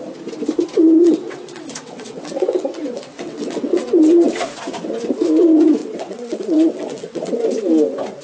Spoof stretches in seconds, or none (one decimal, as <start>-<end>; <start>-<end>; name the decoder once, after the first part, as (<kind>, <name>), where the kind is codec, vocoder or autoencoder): 1.0-4.3 (vocoder, WaveNeXt); 5.8-7.4